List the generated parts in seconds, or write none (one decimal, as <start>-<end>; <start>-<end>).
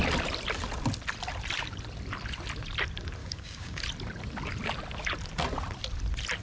3.2-3.8